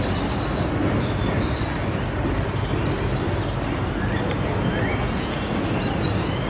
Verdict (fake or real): real